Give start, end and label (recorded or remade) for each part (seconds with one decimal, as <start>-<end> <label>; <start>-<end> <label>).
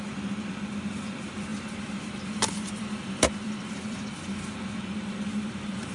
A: 0.0-5.9 remade